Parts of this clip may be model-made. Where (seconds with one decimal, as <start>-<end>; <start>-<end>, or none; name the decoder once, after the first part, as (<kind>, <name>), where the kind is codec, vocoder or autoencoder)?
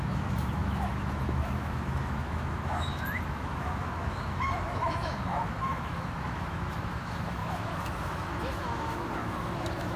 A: 0.0-10.0 (autoencoder, DAC-VAE)